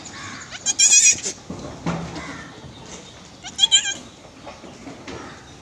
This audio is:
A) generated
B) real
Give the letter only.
B